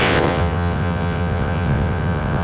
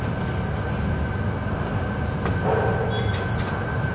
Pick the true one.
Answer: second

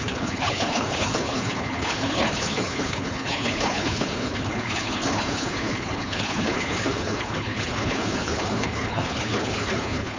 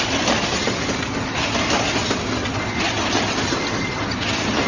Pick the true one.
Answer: second